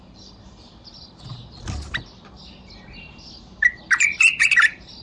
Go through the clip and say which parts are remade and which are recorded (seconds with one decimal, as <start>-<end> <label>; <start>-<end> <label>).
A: 0.0-1.4 remade; 1.4-4.4 recorded; 4.4-5.0 remade